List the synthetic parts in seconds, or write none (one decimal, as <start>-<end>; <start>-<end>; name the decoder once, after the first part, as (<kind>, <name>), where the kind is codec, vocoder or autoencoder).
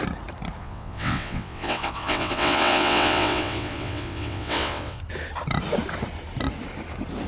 0.6-5.0 (vocoder, WaveNeXt)